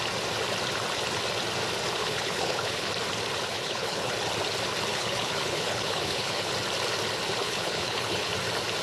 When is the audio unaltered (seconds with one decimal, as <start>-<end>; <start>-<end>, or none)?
0.0-2.0; 2.9-3.5; 4.1-4.9; 6.5-7.4; 8.3-8.8